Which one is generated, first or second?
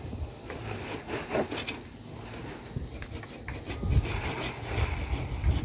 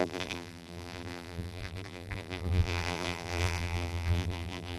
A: second